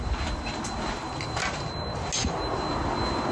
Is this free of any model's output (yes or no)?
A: yes